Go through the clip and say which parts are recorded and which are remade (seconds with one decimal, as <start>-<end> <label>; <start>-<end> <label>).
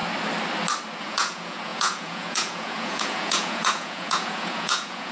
0.0-1.0 recorded; 1.0-5.1 remade